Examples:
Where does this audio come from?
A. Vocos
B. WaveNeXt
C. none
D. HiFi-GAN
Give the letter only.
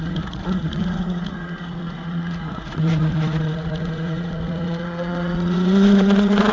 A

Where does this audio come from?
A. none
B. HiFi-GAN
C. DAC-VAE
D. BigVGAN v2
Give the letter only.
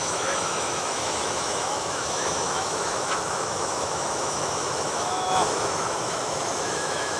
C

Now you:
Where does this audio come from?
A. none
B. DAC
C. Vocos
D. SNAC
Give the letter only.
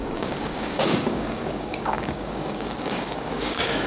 B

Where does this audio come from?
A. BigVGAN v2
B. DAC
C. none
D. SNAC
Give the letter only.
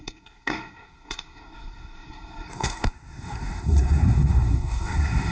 D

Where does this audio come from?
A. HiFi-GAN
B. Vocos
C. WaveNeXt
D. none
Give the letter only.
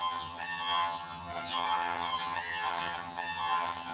A